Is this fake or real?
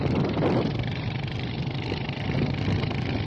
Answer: real